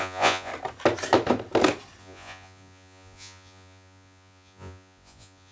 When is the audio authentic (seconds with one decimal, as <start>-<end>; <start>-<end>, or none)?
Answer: 0.5-2.0